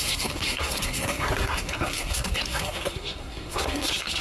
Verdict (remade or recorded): remade